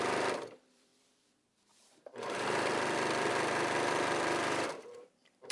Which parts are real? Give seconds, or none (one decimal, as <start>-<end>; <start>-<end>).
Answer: none